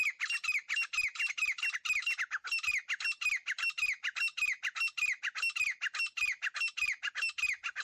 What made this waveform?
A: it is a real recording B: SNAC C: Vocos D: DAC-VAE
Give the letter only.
A